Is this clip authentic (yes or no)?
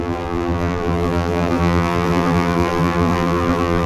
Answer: no